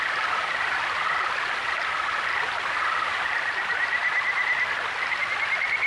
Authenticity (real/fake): real